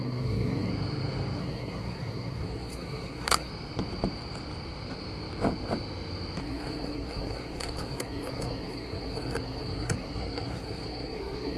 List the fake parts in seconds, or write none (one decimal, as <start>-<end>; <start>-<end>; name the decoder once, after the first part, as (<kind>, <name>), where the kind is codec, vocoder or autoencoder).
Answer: 0.0-0.7 (codec, SNAC); 1.4-3.5; 6.4-11.6